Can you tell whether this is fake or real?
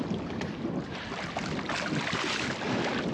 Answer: real